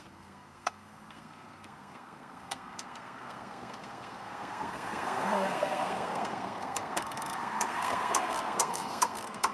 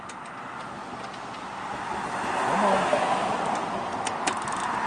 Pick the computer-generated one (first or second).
first